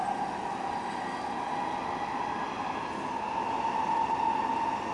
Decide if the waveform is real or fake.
real